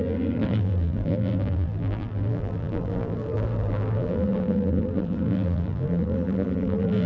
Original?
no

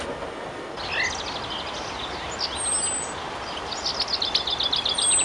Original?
yes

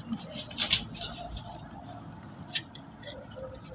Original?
no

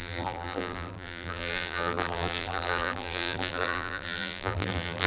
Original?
no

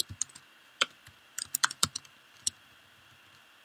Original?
no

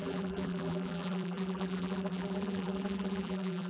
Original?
no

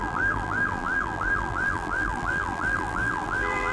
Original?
no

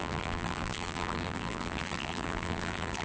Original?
no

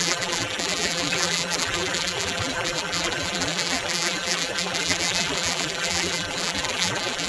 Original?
no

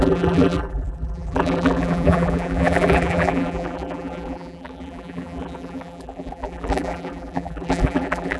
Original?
no